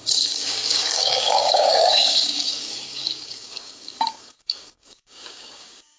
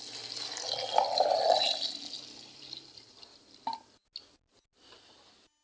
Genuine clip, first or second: second